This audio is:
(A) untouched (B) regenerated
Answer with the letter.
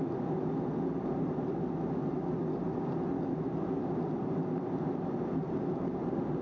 A